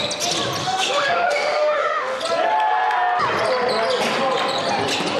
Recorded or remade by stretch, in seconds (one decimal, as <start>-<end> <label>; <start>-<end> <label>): 0.0-0.6 recorded; 0.6-2.2 remade; 2.2-5.2 recorded